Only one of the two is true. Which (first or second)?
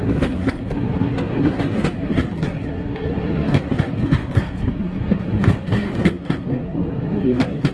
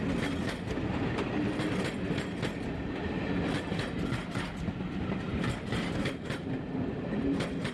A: second